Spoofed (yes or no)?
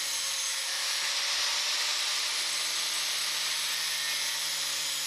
no